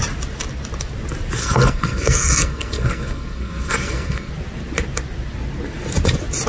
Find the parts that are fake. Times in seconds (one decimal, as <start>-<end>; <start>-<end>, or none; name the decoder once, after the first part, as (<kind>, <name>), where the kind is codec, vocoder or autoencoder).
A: 1.4-4.3 (codec, SNAC)